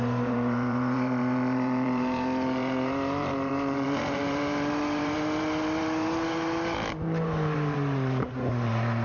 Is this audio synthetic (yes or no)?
yes